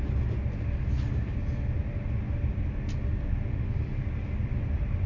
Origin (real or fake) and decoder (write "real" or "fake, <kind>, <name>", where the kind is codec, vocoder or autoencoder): real